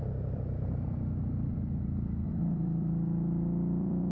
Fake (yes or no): yes